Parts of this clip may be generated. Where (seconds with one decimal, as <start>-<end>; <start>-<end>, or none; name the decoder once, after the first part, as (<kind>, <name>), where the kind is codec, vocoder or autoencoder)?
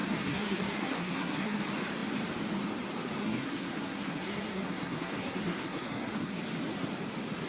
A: 0.0-1.6 (codec, SNAC); 3.2-6.4